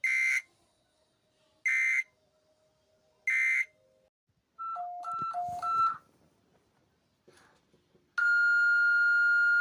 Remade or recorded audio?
recorded